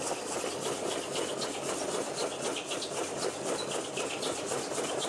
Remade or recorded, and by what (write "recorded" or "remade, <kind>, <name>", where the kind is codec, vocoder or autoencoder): recorded